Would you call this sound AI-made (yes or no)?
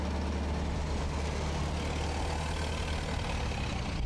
no